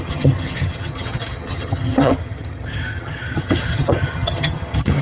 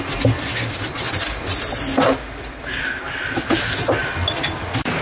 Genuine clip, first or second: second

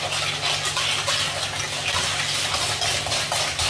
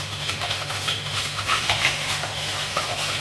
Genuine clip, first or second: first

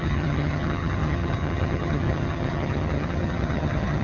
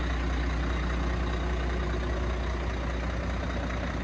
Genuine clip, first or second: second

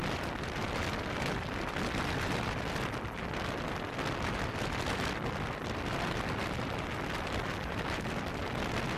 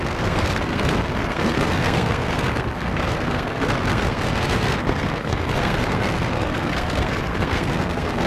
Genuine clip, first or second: first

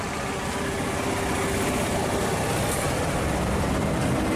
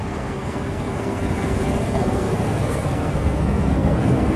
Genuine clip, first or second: first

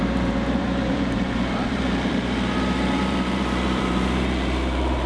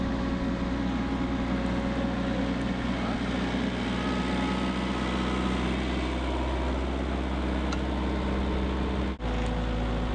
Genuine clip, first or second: second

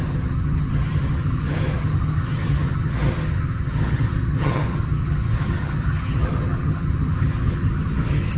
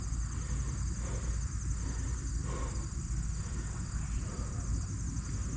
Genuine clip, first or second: second